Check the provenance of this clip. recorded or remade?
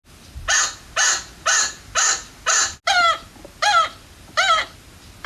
recorded